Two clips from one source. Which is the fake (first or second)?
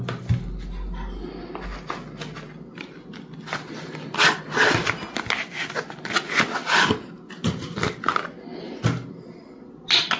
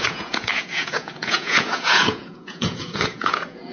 second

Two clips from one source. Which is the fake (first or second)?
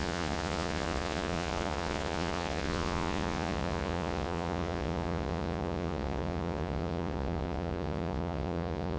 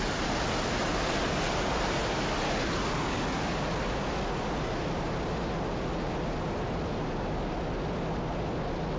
first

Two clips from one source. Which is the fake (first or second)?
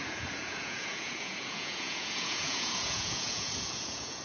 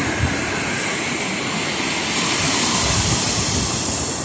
first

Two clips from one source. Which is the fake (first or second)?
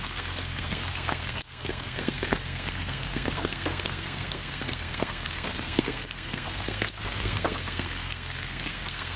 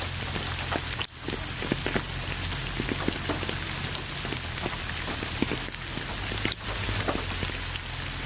first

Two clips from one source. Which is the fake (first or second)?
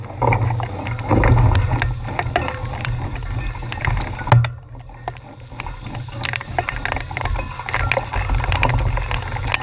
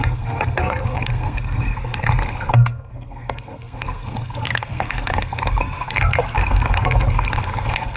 second